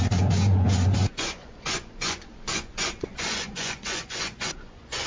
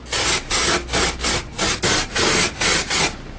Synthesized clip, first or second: first